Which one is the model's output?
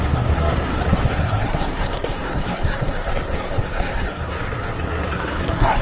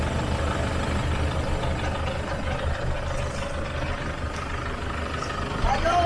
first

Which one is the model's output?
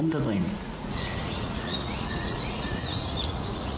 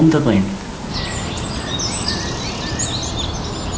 first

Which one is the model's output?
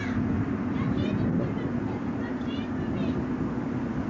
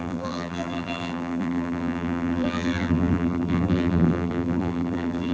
second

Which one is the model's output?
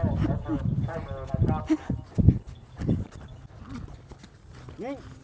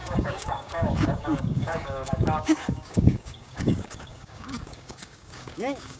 second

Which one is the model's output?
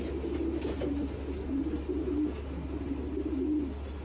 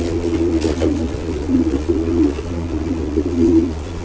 second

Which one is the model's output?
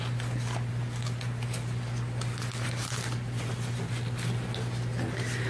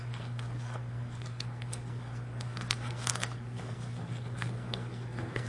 second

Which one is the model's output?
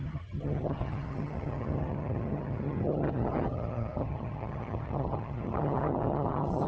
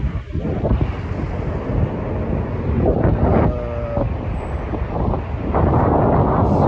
first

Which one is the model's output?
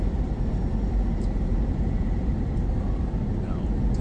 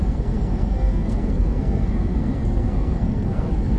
second